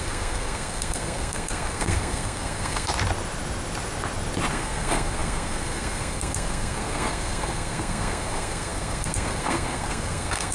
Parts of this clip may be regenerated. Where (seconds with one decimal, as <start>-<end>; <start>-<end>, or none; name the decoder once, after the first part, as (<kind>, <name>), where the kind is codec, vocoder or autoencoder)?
0.0-2.9 (codec, SNAC); 4.5-10.5